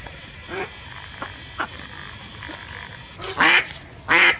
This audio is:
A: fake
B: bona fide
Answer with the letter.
B